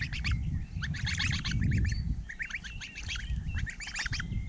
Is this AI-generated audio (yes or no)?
no